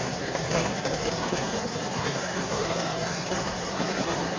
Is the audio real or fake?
fake